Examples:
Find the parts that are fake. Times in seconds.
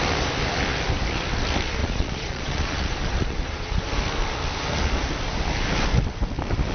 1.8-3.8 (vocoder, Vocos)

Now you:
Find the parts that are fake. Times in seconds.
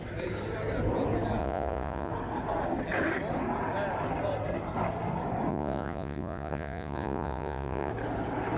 1.4-2.1 (vocoder, Vocos); 5.5-7.9